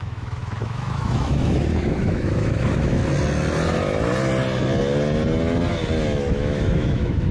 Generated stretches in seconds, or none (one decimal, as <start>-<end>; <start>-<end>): 0.0-3.0; 6.3-7.3